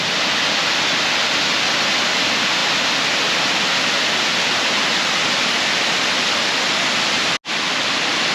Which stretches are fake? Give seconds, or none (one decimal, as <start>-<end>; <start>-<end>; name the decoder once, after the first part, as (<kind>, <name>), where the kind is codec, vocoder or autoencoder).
none